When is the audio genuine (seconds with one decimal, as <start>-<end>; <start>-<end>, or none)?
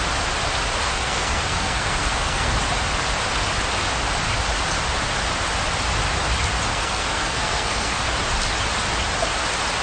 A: 0.0-0.8; 2.5-6.7; 8.0-9.8